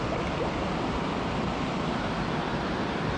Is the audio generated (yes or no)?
no